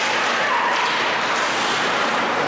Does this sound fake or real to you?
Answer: real